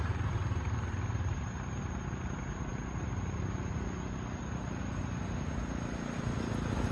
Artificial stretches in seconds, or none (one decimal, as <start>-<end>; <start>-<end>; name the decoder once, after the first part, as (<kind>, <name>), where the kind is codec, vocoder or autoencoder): none